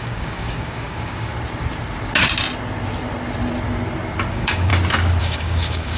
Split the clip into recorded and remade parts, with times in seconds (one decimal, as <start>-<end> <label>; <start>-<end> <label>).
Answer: 0.0-1.3 remade; 1.3-4.3 recorded; 4.3-4.7 remade; 4.7-5.2 recorded; 5.2-6.0 remade